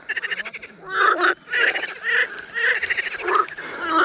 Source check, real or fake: real